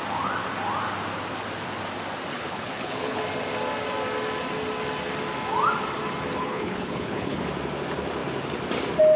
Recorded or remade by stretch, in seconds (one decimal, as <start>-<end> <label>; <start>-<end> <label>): 0.0-2.3 recorded; 2.3-3.2 remade; 3.2-6.4 recorded; 6.4-7.4 remade; 7.4-9.2 recorded